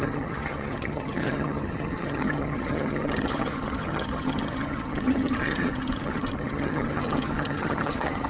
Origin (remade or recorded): remade